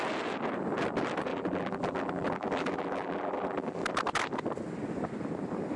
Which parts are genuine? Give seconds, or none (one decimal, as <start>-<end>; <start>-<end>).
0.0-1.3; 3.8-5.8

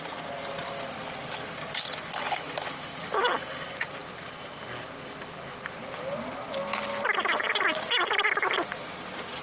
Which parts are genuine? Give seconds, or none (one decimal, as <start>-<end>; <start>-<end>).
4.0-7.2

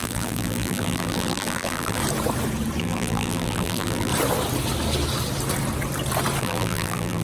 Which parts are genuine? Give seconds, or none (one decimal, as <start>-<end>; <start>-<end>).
2.0-2.8; 4.1-6.4

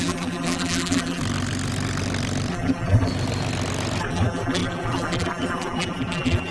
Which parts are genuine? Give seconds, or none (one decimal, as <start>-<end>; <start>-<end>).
1.2-2.5; 3.1-4.0

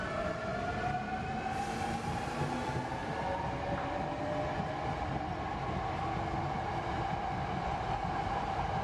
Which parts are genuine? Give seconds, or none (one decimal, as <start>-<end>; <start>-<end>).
0.0-8.8